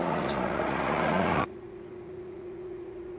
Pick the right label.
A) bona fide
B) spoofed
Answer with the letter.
B